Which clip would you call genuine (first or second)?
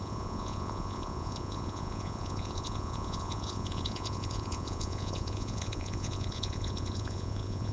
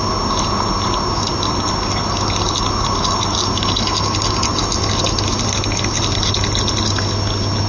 second